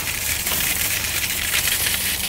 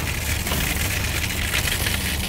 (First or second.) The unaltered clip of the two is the second